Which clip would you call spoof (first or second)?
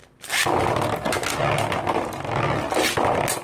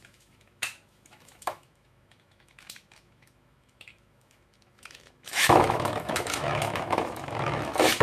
second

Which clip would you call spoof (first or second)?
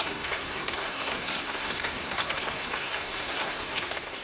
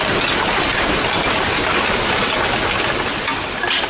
first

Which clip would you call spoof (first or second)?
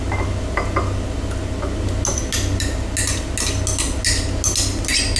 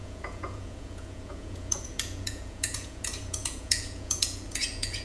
second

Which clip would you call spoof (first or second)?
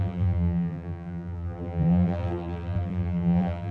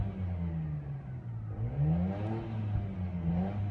first